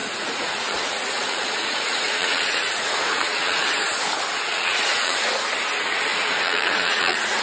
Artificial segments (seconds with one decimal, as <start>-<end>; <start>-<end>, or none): 0.0-3.7; 4.5-5.3; 6.1-7.4